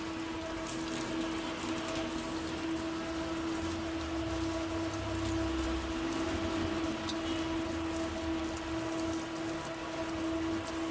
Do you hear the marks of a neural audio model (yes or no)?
no